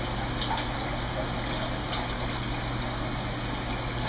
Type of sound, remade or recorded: recorded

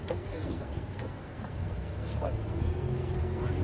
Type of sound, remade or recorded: remade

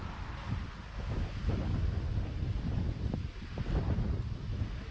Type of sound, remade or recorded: recorded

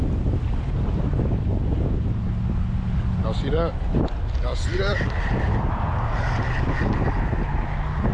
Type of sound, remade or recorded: recorded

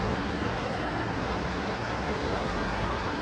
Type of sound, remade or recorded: remade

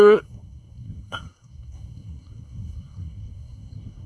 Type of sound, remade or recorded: remade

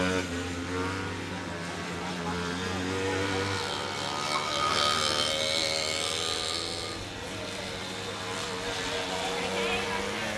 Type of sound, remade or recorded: recorded